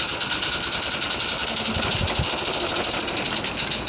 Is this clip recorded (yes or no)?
yes